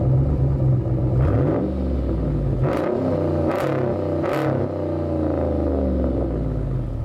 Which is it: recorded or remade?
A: recorded